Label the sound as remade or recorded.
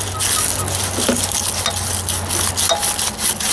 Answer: recorded